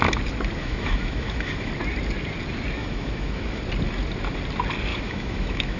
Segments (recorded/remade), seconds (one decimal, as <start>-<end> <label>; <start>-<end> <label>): 0.0-0.6 recorded; 0.6-1.7 remade; 1.7-2.8 recorded; 2.8-3.6 remade; 3.6-4.9 recorded; 4.9-5.8 remade